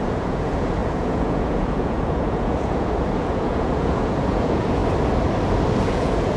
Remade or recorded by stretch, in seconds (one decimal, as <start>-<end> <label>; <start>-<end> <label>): 0.0-4.8 remade; 4.8-5.9 recorded; 5.9-6.4 remade